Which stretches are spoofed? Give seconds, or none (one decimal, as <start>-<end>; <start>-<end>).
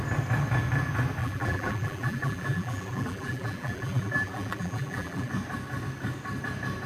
1.2-5.3